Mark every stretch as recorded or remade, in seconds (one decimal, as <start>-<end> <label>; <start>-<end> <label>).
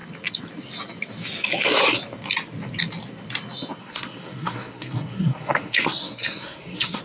0.0-3.8 recorded; 3.8-7.0 remade